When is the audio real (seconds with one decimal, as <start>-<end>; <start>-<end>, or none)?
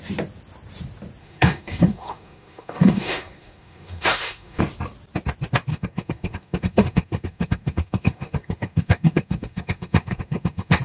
0.0-1.2; 4.6-5.7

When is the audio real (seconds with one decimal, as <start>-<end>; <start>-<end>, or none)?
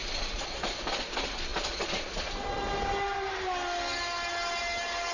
0.0-5.1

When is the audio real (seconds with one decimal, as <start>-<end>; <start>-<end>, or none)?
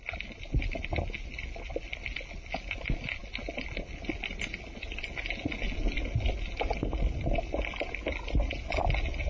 0.0-9.3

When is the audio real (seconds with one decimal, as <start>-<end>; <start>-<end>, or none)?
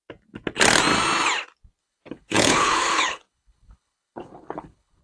0.0-1.8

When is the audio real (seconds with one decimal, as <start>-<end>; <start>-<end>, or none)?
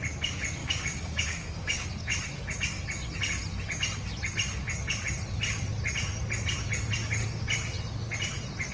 0.0-0.6; 1.9-8.7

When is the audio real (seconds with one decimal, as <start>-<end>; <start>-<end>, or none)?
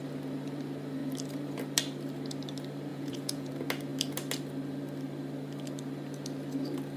0.0-2.9; 3.5-7.0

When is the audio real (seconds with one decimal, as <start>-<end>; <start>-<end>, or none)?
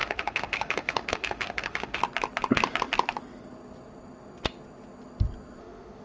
2.0-5.6